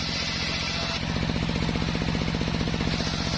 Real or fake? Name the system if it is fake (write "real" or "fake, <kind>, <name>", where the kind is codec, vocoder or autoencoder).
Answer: real